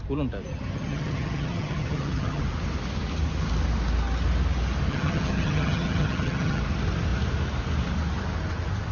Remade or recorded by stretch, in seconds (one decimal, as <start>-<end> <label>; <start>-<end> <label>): 0.0-0.5 recorded; 0.5-2.4 remade; 2.4-4.9 recorded; 4.9-6.6 remade; 6.6-8.9 recorded